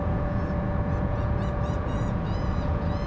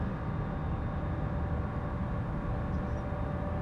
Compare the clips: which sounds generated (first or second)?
first